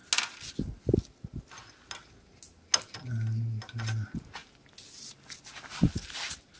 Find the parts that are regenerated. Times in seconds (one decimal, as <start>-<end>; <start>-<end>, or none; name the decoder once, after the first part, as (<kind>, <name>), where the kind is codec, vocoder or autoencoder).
none